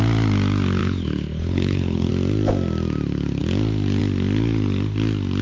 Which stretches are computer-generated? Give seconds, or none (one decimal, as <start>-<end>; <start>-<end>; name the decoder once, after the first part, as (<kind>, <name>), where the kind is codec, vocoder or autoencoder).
0.8-2.1 (codec, HILCodec)